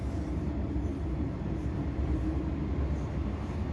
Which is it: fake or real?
real